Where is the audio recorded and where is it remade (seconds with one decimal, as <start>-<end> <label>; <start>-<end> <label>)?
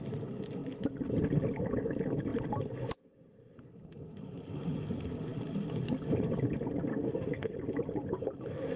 0.0-6.9 recorded; 6.9-7.5 remade; 7.5-8.8 recorded